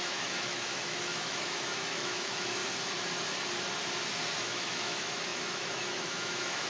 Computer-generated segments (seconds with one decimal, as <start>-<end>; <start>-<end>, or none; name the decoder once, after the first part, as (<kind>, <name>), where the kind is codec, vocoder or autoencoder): 0.0-2.6 (autoencoder, DAC-VAE); 4.4-6.7

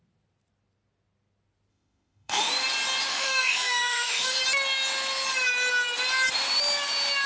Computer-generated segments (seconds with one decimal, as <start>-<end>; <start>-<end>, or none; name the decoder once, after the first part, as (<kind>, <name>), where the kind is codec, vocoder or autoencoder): 1.7-2.5 (autoencoder, DAC-VAE); 3.1-4.4

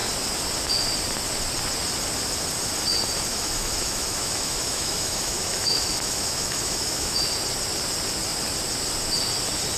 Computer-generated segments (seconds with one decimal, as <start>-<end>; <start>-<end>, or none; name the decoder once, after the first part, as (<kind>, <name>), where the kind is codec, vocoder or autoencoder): 3.3-7.3 (autoencoder, DAC-VAE)

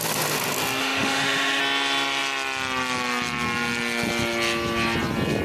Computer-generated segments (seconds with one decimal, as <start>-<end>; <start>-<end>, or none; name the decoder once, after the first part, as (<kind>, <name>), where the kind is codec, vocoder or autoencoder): 0.8-1.6 (autoencoder, DAC-VAE)